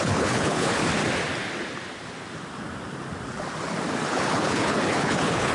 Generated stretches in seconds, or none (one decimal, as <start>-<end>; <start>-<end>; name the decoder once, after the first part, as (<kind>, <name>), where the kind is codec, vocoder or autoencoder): 0.0-0.8 (codec, HILCodec); 4.1-5.5